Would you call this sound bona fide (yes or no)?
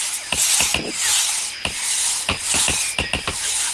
yes